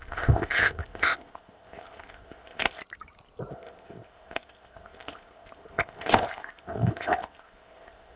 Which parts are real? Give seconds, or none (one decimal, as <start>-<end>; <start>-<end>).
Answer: 2.8-3.5